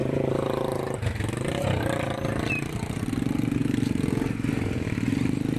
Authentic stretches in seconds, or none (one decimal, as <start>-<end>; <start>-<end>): 0.0-5.6